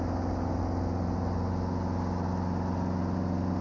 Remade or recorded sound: recorded